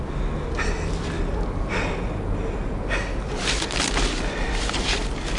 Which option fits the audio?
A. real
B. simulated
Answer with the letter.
A